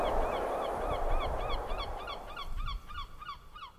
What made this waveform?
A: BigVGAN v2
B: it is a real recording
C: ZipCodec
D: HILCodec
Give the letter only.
B